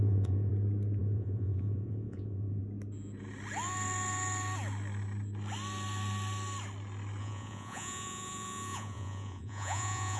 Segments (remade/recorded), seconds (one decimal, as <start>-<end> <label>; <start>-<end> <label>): 0.0-0.5 remade; 0.5-1.0 recorded; 1.0-2.6 remade; 2.6-7.2 recorded; 7.2-10.2 remade